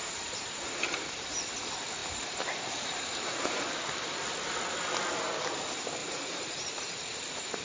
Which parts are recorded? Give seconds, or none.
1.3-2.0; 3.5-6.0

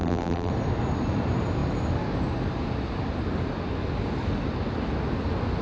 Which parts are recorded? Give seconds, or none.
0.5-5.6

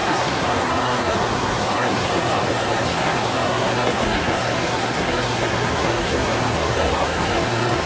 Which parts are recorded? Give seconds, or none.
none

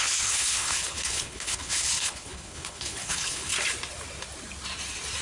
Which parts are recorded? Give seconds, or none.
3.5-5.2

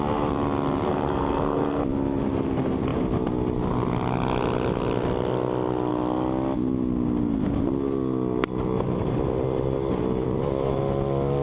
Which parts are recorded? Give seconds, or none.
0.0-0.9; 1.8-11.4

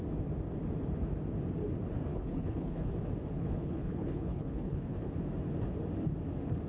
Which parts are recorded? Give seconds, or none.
0.0-2.1; 2.9-3.3; 5.1-6.7

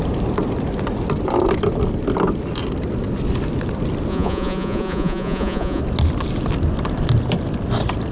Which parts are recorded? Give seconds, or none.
0.0-4.1; 5.8-8.1

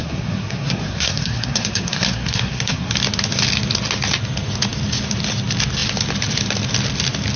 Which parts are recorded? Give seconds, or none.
2.9-7.4